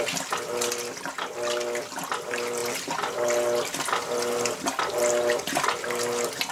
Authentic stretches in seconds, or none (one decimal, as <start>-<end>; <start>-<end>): 0.0-6.5